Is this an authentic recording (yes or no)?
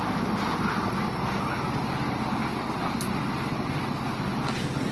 yes